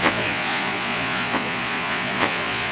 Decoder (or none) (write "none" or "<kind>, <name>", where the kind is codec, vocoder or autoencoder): vocoder, Vocos